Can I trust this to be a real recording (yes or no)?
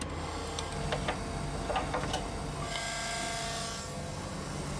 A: yes